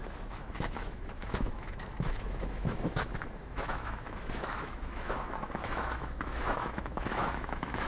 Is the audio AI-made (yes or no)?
yes